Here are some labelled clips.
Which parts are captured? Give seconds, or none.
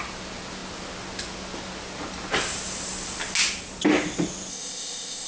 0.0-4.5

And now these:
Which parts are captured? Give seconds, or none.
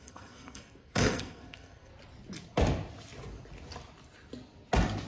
1.9-5.1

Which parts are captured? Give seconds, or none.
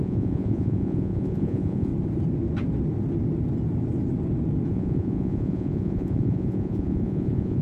1.9-4.7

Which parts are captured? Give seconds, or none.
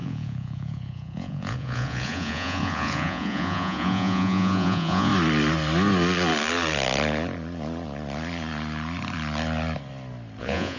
5.1-10.4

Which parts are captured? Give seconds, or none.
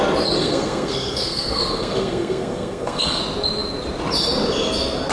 0.0-0.4; 3.2-5.1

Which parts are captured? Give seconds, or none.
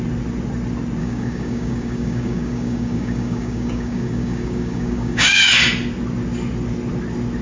0.0-1.0; 5.4-7.4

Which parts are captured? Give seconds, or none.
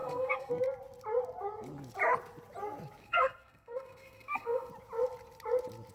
0.5-3.0; 4.7-5.9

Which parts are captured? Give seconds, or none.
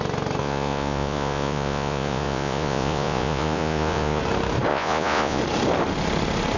0.0-0.4; 4.2-4.7; 5.4-6.6